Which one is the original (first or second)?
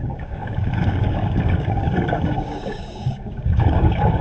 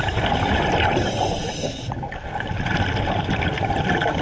second